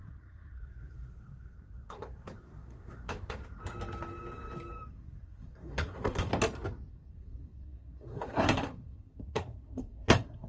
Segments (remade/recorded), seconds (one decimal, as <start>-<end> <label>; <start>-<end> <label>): 0.0-3.4 remade; 3.4-4.9 recorded; 4.9-6.3 remade; 6.3-6.9 recorded; 6.9-10.5 remade